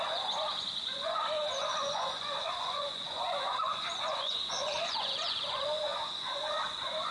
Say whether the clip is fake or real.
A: fake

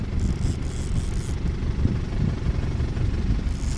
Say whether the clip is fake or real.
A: real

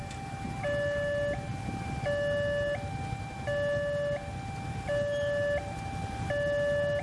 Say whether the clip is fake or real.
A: real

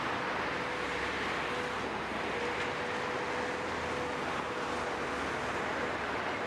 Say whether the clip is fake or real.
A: real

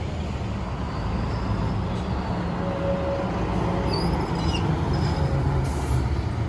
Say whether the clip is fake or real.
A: real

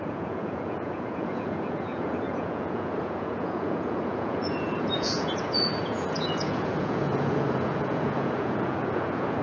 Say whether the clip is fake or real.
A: fake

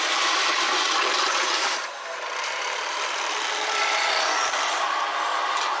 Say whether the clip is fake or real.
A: fake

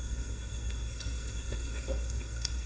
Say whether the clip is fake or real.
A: fake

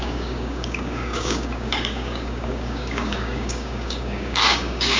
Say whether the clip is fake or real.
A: fake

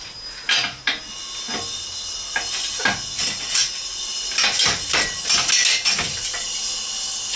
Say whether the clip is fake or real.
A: real